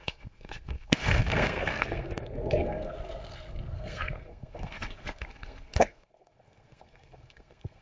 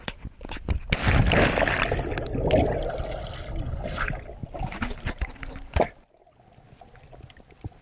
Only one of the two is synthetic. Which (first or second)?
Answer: first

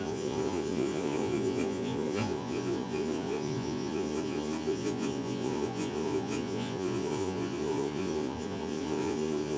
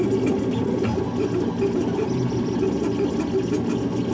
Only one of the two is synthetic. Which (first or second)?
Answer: first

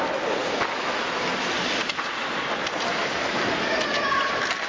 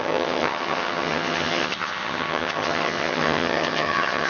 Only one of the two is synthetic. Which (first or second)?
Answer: second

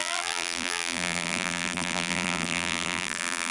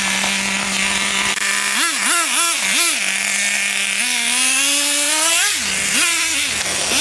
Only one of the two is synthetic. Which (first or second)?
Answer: first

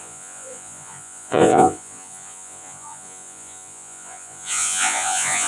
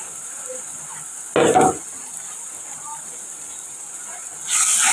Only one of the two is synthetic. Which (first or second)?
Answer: first